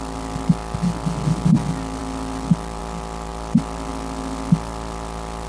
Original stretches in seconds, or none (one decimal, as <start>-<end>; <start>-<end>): 0.0-2.0; 2.8-3.3; 3.9-5.5